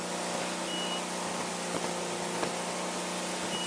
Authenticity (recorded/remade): recorded